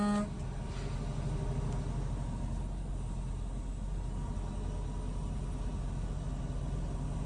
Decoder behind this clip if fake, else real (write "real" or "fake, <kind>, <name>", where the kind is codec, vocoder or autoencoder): real